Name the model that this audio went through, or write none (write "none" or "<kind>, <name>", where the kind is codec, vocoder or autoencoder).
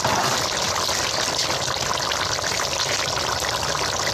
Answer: none